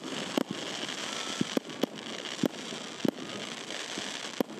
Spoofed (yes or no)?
no